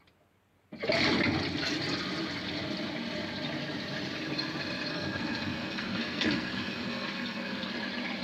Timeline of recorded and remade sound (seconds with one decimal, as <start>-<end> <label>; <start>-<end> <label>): 0.0-4.9 recorded; 4.9-7.7 remade; 7.7-8.2 recorded